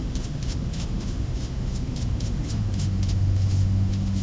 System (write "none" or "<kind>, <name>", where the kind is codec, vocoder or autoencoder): autoencoder, DAC-VAE